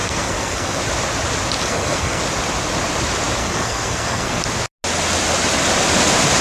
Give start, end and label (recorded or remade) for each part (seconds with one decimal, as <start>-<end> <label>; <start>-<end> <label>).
0.0-0.8 remade; 0.8-1.6 recorded; 1.6-2.2 remade; 2.2-3.4 recorded; 3.4-4.4 remade; 4.4-6.4 recorded